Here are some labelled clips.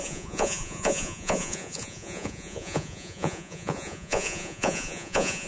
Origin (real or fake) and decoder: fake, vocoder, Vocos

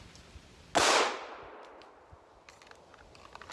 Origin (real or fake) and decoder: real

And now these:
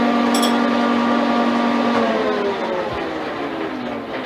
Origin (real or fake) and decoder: real